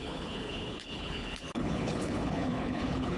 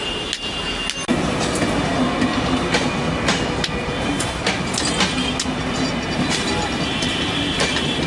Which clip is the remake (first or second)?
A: first